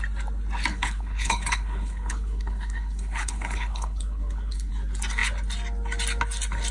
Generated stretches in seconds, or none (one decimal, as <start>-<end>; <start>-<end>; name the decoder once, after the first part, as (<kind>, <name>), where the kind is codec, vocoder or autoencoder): 0.7-4.7 (codec, HILCodec)